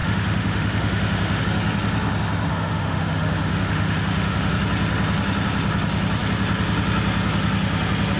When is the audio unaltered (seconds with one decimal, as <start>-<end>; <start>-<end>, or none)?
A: 1.4-2.5; 4.5-8.2